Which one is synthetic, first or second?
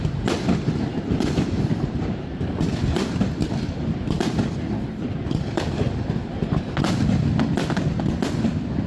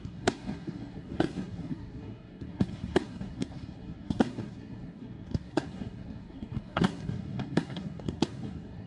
second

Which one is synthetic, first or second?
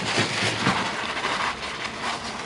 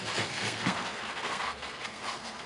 second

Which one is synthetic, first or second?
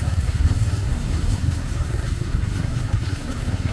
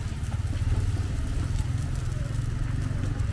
first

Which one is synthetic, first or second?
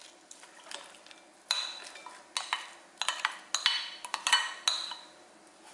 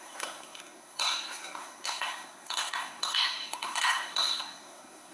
second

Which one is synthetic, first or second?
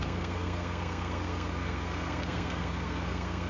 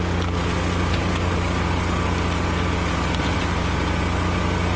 first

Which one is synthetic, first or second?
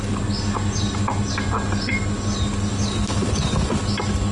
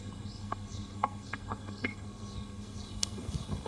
second